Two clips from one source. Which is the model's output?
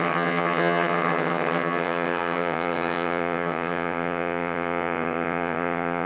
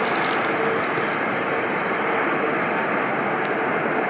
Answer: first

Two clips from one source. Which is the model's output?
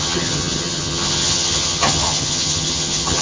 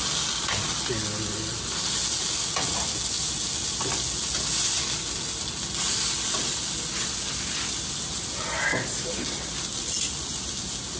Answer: first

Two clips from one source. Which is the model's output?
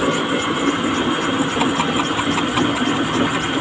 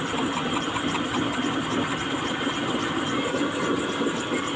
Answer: second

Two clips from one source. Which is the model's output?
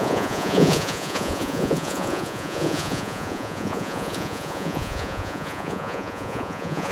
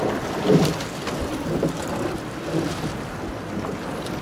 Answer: first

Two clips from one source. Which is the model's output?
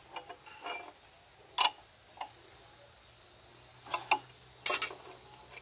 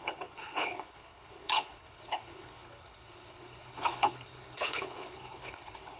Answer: second